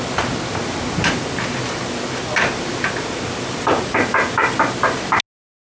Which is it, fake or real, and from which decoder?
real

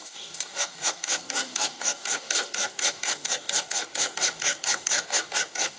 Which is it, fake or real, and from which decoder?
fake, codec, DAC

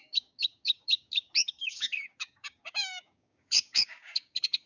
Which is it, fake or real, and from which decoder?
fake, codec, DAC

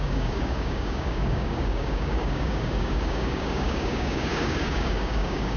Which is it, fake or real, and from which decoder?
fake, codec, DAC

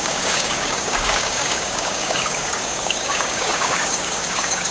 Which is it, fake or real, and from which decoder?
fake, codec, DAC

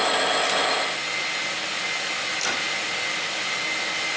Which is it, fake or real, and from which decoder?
real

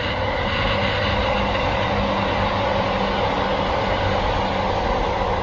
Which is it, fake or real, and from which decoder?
real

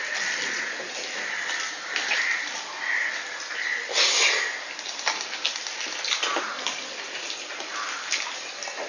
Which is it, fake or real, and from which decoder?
real